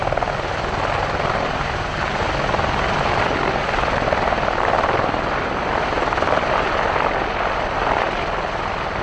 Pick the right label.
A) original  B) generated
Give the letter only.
B